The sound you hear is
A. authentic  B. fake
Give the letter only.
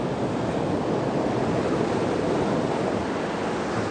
A